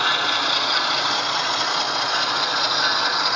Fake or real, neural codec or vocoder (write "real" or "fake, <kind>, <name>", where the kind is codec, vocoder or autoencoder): fake, vocoder, Vocos